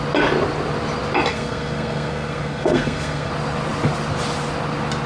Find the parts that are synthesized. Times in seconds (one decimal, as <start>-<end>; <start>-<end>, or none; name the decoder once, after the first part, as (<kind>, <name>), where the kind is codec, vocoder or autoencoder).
1.3-3.3 (codec, SNAC)